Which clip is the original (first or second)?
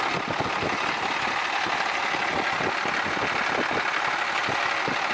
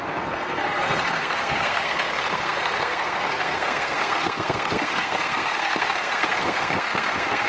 first